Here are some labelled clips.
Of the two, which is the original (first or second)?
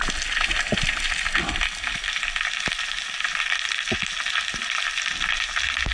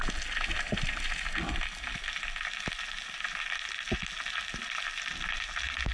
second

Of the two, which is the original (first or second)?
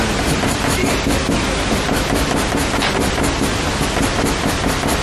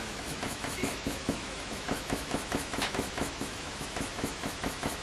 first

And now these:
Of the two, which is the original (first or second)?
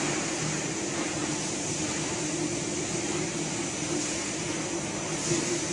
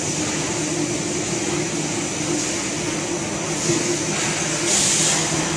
second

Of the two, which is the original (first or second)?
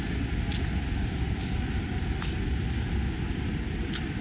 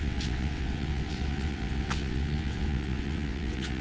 first